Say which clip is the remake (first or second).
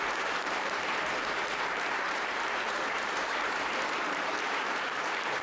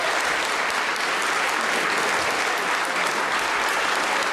first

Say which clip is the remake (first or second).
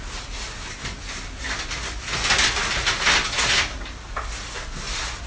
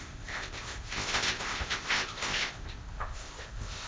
second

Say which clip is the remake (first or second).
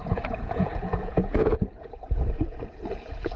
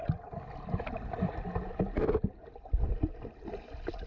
first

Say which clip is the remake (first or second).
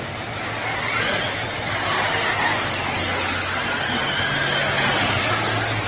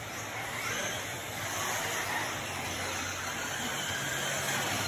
second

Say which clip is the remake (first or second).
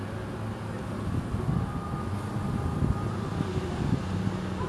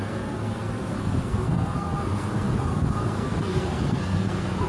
second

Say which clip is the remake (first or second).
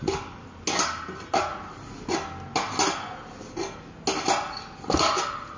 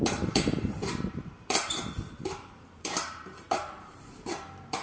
second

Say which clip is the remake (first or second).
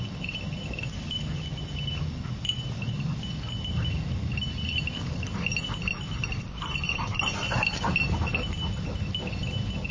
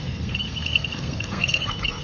second